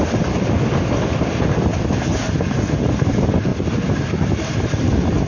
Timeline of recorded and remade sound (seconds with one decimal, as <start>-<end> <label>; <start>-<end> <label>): 0.0-5.3 recorded